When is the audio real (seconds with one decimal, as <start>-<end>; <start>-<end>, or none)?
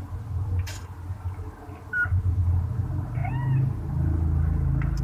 0.0-5.0